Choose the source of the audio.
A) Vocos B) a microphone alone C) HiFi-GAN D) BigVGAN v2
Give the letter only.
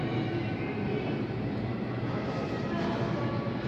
B